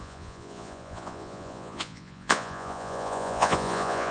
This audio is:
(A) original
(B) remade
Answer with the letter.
B